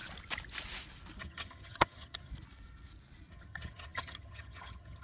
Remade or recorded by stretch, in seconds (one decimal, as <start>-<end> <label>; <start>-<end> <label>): 0.0-1.2 recorded; 1.2-2.3 remade; 2.3-3.3 recorded; 3.3-5.0 remade